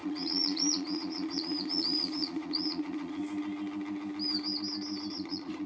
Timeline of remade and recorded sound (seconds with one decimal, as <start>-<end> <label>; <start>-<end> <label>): 0.0-3.2 remade; 3.2-5.1 recorded; 5.1-5.7 remade